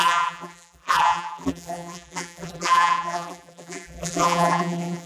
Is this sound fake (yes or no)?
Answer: yes